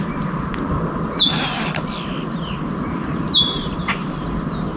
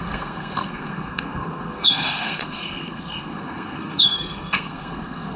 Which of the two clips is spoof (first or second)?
second